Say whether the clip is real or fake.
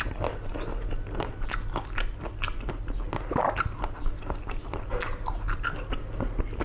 real